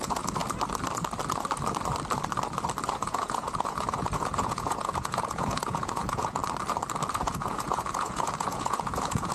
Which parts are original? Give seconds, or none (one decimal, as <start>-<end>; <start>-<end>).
0.4-2.9; 6.4-7.1